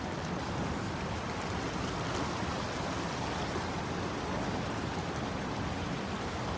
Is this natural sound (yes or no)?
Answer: yes